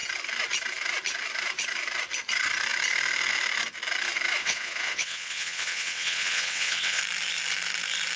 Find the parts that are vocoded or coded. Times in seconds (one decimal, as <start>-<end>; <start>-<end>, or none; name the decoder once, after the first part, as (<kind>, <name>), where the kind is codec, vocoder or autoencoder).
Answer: 4.4-7.0 (vocoder, WaveNeXt)

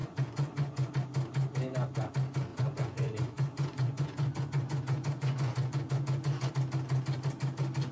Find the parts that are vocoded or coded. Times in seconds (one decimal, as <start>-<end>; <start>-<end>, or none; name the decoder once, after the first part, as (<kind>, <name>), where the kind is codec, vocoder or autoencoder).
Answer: 0.0-0.9 (vocoder, Vocos); 2.5-6.5